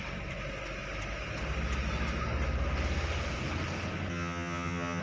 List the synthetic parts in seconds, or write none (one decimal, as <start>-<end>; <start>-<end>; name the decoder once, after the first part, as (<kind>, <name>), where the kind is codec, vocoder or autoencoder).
4.1-5.0 (vocoder, HiFi-GAN)